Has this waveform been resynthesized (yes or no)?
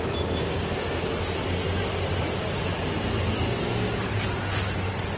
no